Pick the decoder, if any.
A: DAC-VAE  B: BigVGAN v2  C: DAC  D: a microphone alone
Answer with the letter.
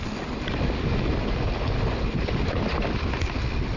D